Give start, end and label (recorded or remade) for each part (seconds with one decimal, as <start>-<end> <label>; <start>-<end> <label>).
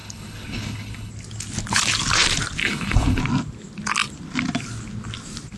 0.0-1.1 remade; 1.1-2.6 recorded; 2.6-3.2 remade; 3.2-5.6 recorded